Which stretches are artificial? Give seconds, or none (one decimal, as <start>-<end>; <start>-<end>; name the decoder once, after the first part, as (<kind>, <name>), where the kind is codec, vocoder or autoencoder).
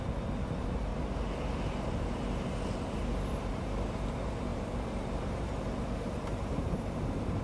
0.0-0.9 (vocoder, BigVGAN v2); 3.5-7.4